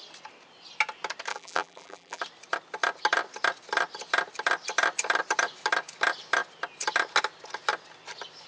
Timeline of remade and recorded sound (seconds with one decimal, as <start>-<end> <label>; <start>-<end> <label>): 0.0-1.3 recorded; 1.3-2.2 remade; 2.2-8.5 recorded